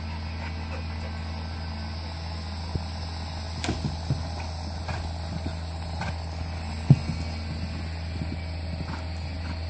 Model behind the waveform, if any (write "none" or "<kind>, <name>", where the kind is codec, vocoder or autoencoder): none